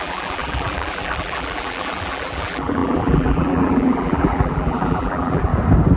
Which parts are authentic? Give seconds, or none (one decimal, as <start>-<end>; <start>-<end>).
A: 5.5-6.0